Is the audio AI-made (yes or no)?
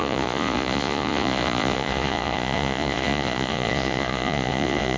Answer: yes